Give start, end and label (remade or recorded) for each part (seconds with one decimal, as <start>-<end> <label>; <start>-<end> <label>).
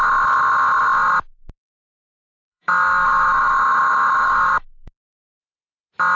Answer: 0.0-1.7 recorded; 1.7-5.4 remade; 5.4-6.2 recorded